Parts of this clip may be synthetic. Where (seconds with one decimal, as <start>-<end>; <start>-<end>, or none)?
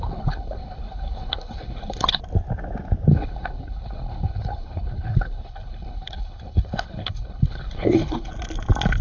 0.0-2.2; 3.1-8.3